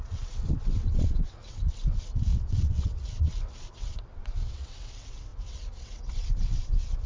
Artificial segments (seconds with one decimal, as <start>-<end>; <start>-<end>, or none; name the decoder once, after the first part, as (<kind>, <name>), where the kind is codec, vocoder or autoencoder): 0.0-7.1 (vocoder, WaveNeXt)